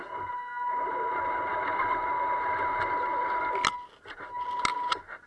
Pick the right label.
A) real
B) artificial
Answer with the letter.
A